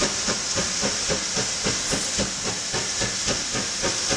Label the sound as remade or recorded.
recorded